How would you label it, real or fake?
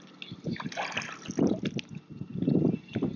real